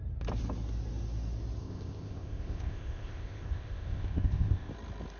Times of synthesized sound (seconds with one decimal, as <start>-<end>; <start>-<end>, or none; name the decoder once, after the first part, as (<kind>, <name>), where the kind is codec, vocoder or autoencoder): 1.6-4.7 (codec, ZipCodec)